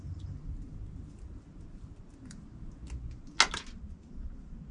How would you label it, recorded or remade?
recorded